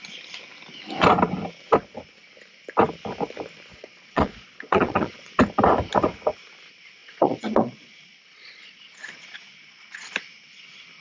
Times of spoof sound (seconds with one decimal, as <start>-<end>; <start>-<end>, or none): 3.7-5.3; 7.0-10.1